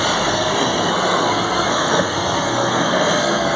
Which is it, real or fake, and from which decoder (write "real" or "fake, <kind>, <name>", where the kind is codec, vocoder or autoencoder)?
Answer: fake, codec, SNAC